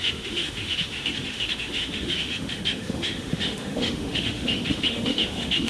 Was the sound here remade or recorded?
remade